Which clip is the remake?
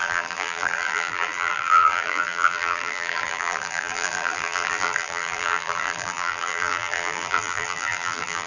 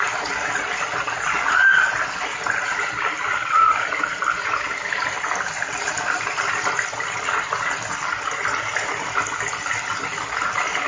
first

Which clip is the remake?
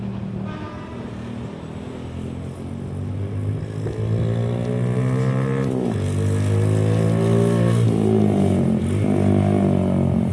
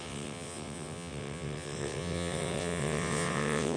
second